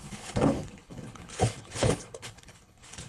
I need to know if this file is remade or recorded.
remade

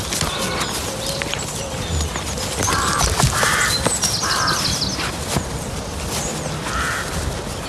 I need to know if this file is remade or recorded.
recorded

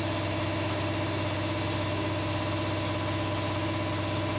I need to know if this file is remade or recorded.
recorded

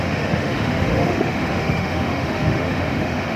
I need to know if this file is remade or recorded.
remade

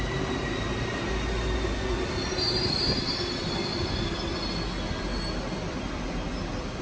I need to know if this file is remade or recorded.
recorded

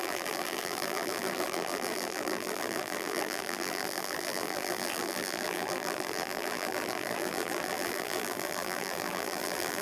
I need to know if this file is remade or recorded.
remade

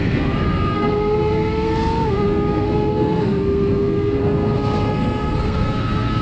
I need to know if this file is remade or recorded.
remade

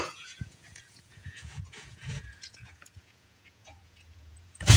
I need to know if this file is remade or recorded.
remade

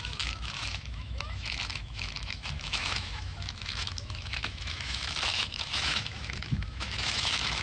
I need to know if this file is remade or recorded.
remade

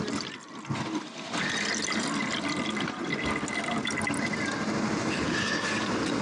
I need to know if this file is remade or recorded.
recorded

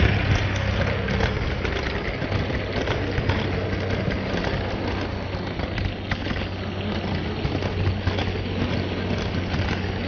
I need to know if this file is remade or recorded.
recorded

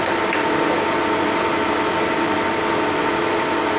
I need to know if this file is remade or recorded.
recorded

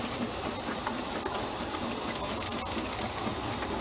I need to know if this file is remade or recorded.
recorded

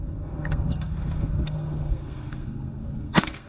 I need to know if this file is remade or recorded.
remade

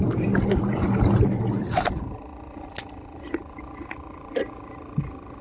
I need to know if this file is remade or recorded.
remade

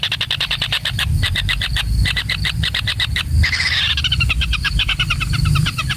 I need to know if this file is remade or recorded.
remade